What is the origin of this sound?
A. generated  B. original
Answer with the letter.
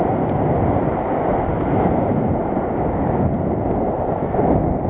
B